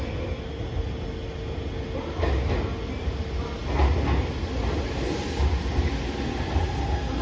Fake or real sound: real